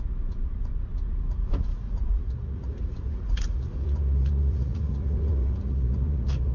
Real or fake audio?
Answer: fake